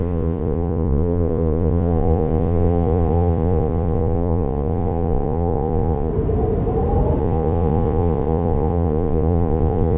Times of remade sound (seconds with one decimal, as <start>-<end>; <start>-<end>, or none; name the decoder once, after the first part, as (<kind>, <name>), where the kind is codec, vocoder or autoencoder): 0.0-6.1 (vocoder, Vocos); 7.2-10.0